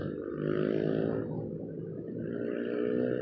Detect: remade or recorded recorded